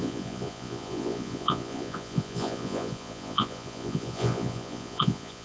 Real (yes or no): no